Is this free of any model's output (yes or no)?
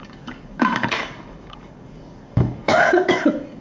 no